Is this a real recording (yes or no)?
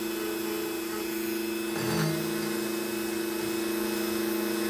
yes